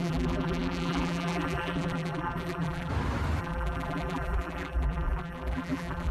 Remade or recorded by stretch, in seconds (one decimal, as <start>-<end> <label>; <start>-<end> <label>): 0.0-2.9 remade; 2.9-3.4 recorded; 3.4-6.1 remade